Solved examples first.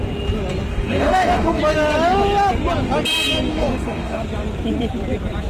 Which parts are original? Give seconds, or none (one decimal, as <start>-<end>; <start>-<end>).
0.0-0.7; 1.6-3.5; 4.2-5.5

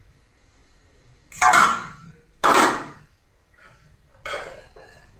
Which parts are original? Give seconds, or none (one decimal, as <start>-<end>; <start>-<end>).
none

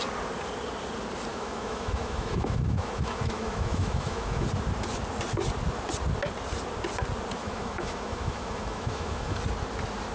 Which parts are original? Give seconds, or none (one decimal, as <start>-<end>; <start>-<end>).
0.0-1.3; 4.5-7.4; 9.4-10.1